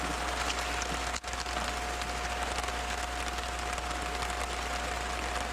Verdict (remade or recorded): recorded